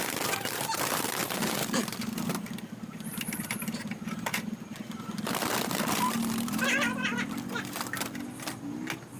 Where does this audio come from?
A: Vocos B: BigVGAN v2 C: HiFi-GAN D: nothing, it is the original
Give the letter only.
B